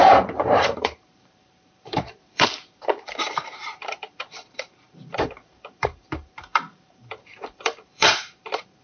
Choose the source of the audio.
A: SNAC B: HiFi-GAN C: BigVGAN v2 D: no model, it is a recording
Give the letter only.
C